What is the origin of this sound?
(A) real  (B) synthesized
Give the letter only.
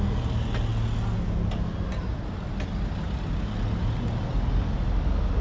A